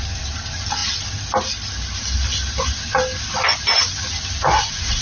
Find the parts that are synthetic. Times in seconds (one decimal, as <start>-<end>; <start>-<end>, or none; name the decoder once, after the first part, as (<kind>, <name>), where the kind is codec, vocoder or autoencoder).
none